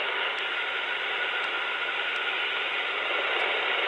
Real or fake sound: real